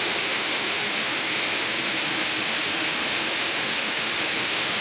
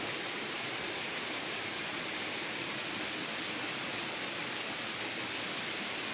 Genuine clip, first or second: second